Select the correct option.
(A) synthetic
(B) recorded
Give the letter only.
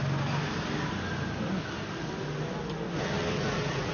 B